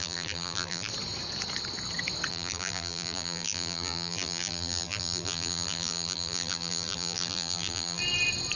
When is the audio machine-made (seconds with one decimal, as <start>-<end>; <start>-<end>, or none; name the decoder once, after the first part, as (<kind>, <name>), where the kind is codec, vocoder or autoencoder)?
0.0-0.9 (vocoder, BigVGAN v2); 2.3-8.0